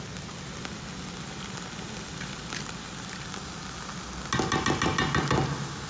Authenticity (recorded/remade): recorded